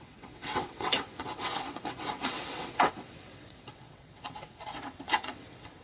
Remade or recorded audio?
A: remade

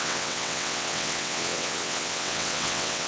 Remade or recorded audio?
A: remade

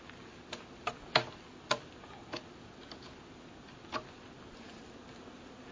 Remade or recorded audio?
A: recorded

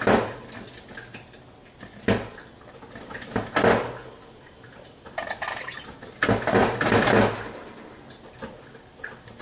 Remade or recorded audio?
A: recorded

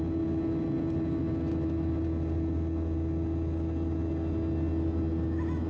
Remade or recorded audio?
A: recorded